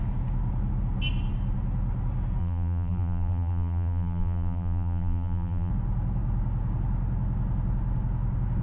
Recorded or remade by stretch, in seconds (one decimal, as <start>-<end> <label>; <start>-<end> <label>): 0.0-2.4 recorded; 2.4-5.7 remade; 5.7-8.6 recorded